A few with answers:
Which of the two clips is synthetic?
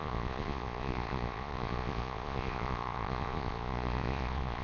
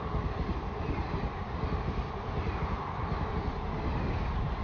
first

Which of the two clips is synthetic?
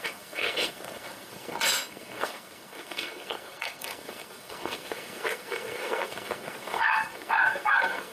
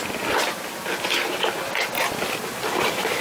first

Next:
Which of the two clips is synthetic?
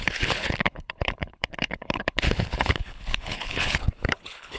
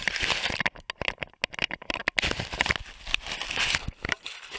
first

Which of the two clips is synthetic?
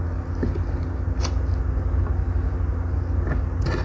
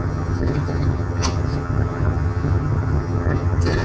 second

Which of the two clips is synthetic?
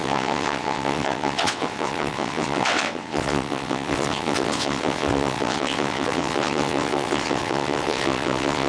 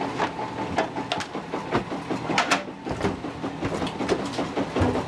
first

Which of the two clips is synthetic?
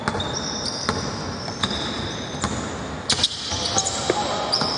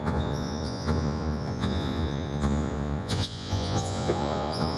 second